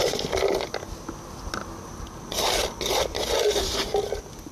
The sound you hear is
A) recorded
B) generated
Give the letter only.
A